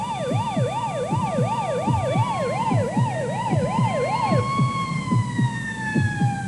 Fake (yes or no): no